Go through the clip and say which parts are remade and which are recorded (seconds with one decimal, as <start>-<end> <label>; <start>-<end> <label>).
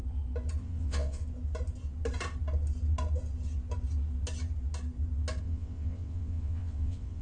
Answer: 0.0-0.6 recorded; 0.6-1.2 remade; 1.2-5.4 recorded; 5.4-7.2 remade